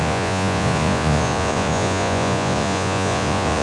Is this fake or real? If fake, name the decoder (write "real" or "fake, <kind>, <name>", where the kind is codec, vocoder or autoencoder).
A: fake, vocoder, Vocos